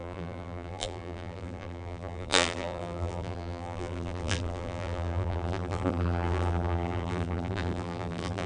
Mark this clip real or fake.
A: fake